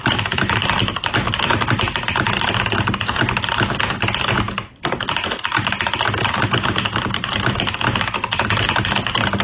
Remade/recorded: recorded